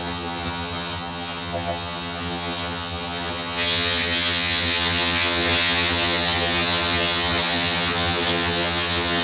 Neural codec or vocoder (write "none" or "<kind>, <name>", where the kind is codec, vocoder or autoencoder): vocoder, HiFi-GAN